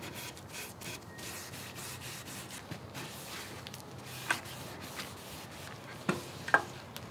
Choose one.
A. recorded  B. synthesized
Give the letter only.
A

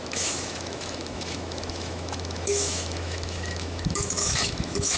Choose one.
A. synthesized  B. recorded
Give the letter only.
A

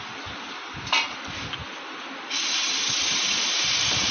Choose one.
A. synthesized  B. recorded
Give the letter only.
B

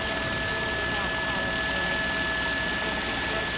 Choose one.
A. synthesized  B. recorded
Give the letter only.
B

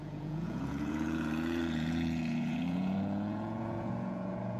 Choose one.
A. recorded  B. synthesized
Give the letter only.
B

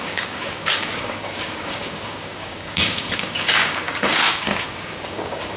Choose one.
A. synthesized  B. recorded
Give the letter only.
A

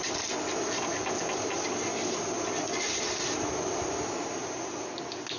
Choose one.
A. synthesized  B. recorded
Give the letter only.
B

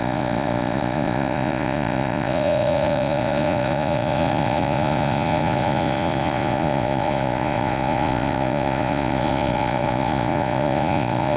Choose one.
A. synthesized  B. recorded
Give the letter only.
A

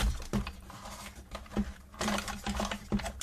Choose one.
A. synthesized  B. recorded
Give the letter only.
B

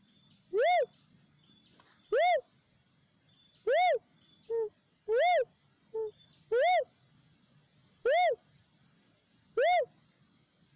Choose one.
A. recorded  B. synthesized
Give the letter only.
A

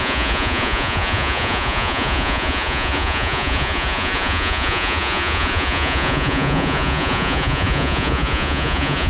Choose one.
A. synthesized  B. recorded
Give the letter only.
A